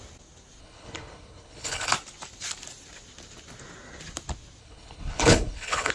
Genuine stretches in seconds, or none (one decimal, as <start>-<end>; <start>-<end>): 0.0-0.6; 1.9-4.6